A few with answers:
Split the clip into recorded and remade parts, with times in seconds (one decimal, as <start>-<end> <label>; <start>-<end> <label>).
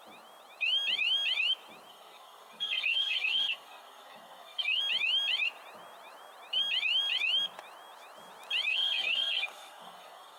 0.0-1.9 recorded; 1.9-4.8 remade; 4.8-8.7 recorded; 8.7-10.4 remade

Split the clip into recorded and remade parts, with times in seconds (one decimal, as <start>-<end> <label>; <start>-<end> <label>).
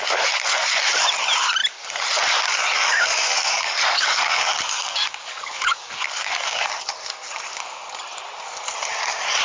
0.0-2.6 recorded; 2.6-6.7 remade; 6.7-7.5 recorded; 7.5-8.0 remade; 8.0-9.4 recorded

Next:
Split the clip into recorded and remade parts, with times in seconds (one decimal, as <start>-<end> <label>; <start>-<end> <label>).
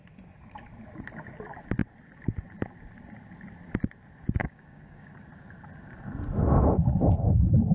0.0-4.4 recorded; 4.4-5.2 remade; 5.2-7.7 recorded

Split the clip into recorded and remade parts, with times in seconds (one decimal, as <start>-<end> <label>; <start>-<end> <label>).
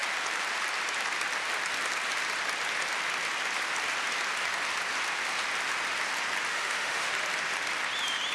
0.0-6.5 recorded; 6.5-7.1 remade; 7.1-8.3 recorded